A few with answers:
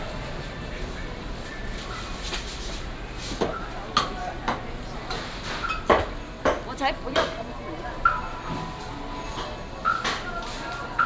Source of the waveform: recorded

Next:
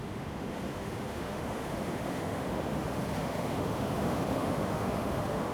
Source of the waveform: remade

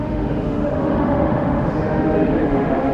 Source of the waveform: remade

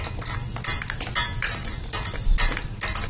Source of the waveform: recorded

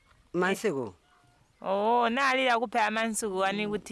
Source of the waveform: recorded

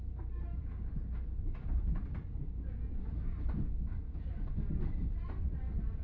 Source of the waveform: recorded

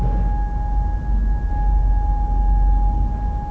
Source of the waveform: recorded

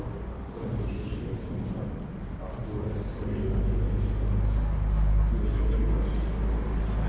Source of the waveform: recorded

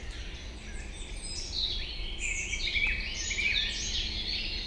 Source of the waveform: recorded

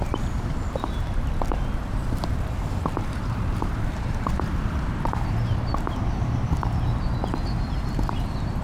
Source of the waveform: remade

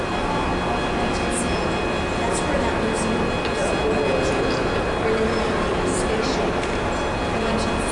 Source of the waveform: recorded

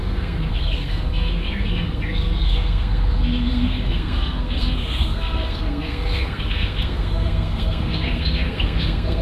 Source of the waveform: remade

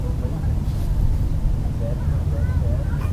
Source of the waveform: recorded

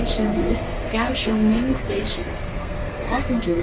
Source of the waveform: remade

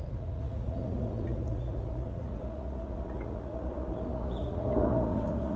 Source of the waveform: remade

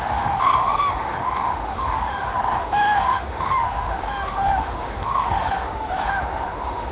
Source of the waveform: remade